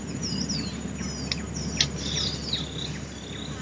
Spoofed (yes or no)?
no